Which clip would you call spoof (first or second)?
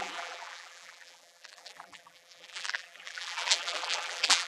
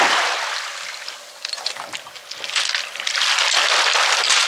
first